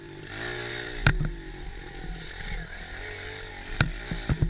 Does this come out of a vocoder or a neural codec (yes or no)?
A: no